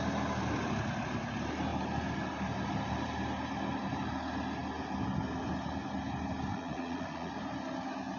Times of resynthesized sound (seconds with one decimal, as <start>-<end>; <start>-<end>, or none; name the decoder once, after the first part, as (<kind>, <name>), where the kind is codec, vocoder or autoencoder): 6.5-7.3 (vocoder, Vocos)